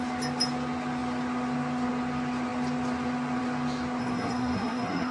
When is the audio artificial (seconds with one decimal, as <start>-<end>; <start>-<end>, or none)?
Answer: 4.0-5.1